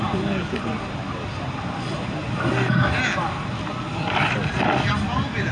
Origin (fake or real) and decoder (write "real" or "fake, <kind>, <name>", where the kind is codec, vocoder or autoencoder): real